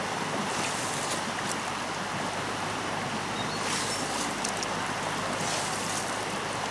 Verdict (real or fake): real